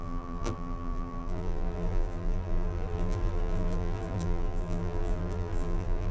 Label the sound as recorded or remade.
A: remade